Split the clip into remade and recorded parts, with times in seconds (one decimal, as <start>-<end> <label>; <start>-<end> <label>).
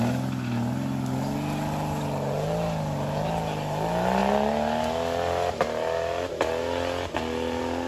0.0-7.9 recorded